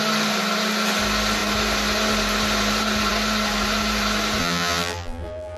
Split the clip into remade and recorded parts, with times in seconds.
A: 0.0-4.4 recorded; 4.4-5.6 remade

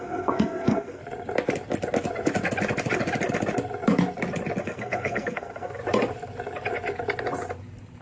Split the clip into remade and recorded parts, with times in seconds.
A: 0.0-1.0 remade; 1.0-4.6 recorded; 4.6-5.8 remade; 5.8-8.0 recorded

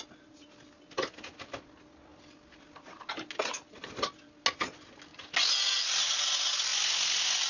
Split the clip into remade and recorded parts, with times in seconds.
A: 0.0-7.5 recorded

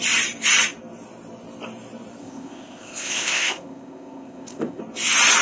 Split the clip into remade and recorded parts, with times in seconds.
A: 0.0-2.2 recorded; 2.2-4.8 remade; 4.8-5.4 recorded

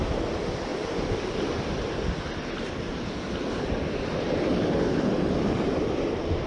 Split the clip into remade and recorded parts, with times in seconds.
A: 0.0-6.5 recorded

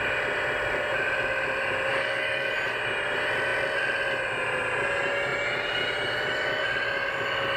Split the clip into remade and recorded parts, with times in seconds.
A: 0.0-1.9 recorded; 1.9-2.5 remade; 2.5-7.6 recorded

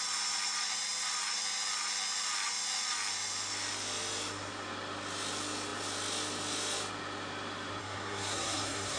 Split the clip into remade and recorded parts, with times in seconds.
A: 0.0-7.8 recorded; 7.8-9.0 remade

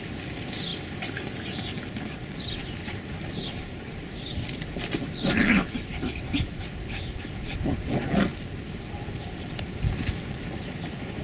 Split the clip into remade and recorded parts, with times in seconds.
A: 0.0-2.2 recorded; 2.2-5.0 remade; 5.0-8.3 recorded; 8.3-9.5 remade; 9.5-11.2 recorded